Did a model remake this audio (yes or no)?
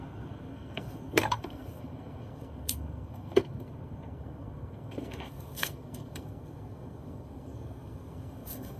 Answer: yes